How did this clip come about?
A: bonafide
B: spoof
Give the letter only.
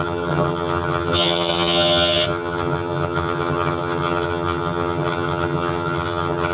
B